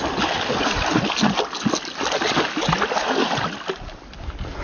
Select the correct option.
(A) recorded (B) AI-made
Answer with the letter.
A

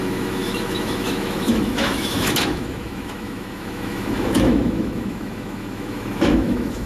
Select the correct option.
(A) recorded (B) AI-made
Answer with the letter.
B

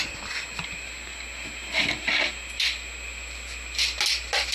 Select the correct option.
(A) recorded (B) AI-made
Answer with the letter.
A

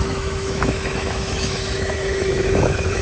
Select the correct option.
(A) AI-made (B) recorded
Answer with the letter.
A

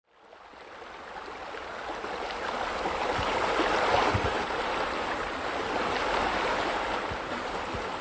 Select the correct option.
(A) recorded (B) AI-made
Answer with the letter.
A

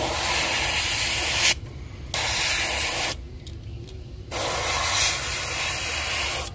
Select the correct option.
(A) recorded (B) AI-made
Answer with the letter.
A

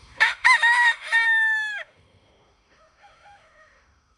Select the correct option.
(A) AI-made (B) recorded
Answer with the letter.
A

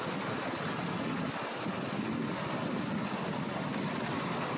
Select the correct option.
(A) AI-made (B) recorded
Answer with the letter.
B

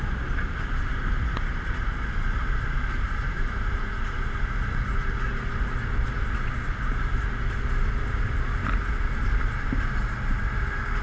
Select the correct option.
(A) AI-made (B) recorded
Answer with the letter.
B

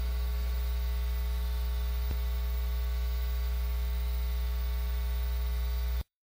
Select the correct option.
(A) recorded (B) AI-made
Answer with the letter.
B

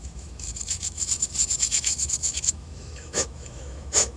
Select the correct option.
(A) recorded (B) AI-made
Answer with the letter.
B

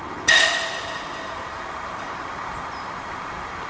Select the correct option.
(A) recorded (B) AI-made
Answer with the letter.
A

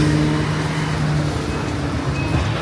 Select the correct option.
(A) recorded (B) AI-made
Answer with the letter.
A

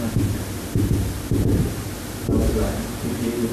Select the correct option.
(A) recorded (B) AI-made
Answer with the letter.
A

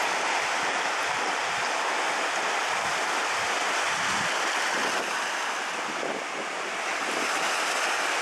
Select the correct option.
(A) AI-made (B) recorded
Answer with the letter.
B